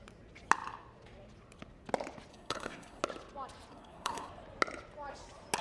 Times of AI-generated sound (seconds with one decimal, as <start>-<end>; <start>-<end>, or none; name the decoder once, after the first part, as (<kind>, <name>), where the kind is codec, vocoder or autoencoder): 2.3-3.0 (codec, SNAC); 3.7-4.3